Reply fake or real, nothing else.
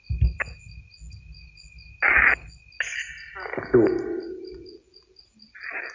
real